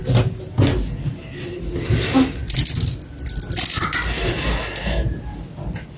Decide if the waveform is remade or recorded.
recorded